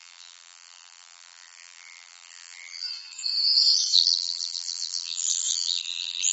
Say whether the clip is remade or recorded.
remade